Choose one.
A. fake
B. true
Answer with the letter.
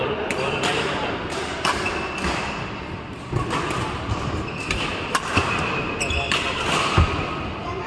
B